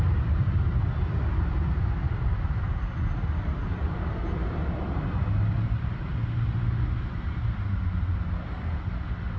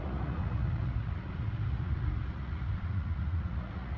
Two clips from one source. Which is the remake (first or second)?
second